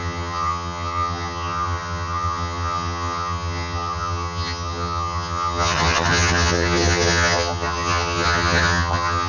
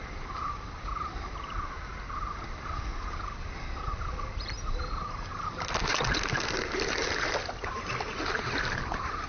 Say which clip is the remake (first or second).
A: first